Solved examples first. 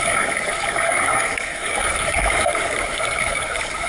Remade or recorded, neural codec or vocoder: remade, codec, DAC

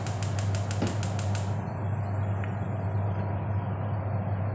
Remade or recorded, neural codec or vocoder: recorded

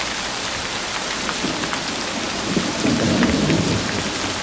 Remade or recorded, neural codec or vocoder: recorded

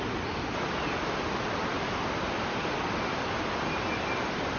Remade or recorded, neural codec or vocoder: recorded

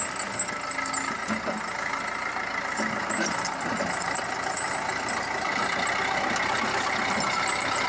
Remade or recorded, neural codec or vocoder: recorded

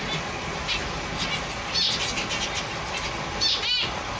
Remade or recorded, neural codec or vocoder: recorded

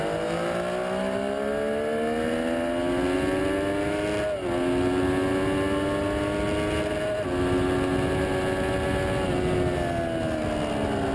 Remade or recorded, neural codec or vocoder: recorded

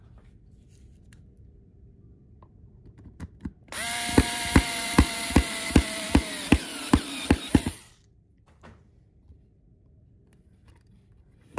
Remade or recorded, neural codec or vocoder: remade, vocoder, BigVGAN v2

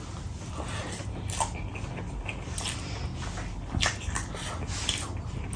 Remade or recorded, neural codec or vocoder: recorded